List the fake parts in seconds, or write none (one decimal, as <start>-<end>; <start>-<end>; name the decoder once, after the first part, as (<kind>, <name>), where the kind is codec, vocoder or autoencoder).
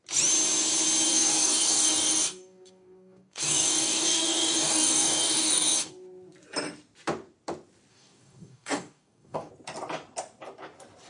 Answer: 1.1-5.9 (codec, DAC); 7.9-9.5